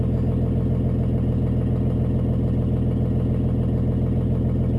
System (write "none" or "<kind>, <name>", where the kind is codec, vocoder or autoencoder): none